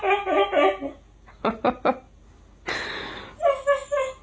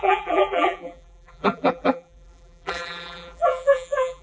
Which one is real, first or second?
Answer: first